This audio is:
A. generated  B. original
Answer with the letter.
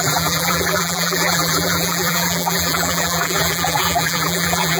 A